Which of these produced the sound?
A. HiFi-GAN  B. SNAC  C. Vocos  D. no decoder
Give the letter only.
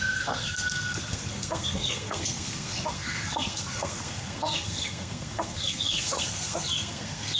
B